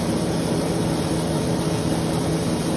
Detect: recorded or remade remade